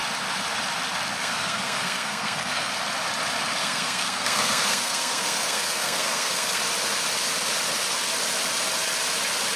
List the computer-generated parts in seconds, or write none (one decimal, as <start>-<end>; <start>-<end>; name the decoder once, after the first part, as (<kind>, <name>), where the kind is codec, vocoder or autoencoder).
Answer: 1.2-2.7 (codec, SNAC); 3.6-6.6